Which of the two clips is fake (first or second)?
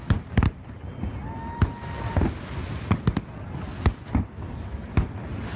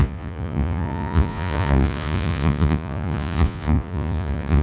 second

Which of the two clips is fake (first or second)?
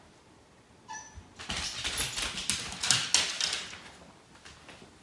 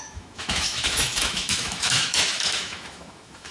second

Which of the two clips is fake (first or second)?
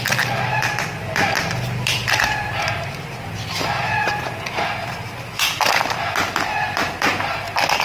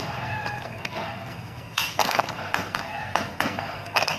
second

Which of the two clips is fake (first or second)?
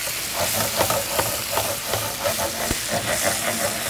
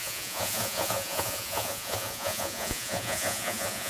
second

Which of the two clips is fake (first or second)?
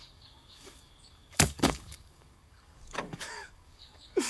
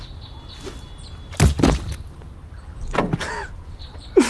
first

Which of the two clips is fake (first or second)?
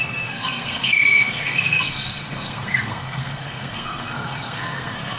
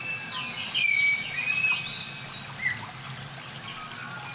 first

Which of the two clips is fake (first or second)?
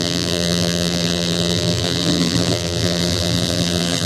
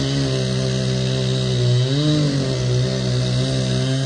first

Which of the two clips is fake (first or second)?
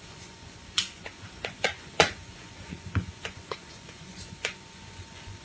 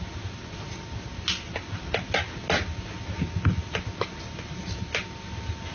first